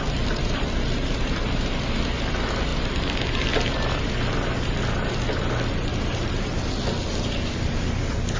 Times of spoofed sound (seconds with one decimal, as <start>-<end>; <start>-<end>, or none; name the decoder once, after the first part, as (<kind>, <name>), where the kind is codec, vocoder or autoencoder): none